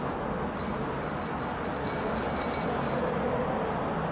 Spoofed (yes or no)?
no